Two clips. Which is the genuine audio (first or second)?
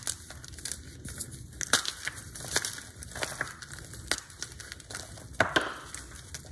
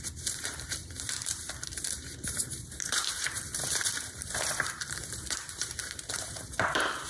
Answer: first